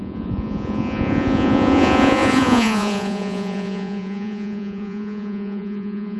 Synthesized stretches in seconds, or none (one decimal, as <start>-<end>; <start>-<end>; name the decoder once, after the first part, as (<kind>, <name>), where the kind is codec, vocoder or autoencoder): 0.0-6.2 (vocoder, Vocos)